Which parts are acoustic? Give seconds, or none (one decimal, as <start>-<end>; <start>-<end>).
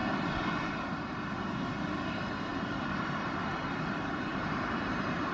0.0-1.7